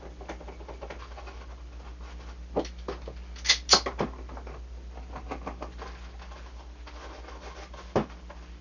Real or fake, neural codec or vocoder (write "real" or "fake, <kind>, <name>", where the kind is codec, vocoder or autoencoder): real